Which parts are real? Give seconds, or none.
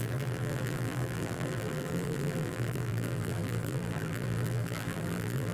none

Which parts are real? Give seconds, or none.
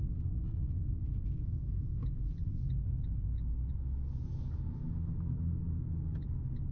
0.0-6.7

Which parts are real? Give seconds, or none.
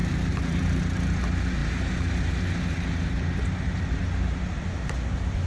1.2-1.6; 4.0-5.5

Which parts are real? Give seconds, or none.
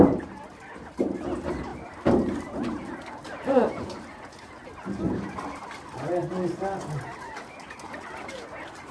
0.0-1.7; 4.3-8.9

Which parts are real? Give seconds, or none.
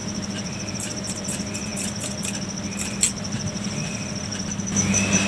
1.1-5.3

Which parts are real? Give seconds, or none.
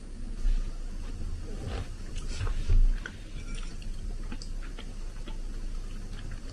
0.0-1.6; 2.7-3.7; 4.7-6.5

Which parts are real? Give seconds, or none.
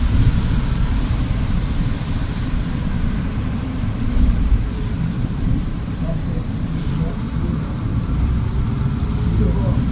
0.0-2.2; 6.9-7.9; 8.6-9.9